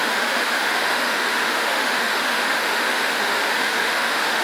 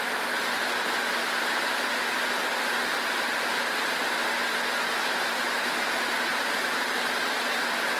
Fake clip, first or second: first